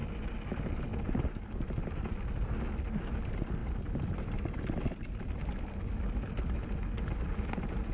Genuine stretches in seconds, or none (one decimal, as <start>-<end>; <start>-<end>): 0.0-7.9